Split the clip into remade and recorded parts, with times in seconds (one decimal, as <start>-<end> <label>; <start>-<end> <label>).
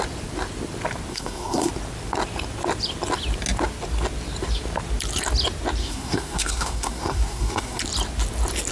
0.0-1.1 recorded; 1.1-1.7 remade; 1.7-5.8 recorded; 5.8-7.8 remade; 7.8-8.7 recorded